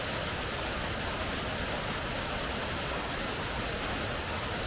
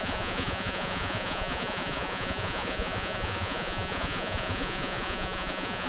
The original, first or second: first